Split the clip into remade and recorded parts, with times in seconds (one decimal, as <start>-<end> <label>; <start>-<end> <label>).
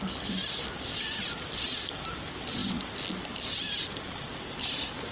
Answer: 0.0-5.1 recorded